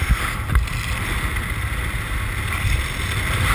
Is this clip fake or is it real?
real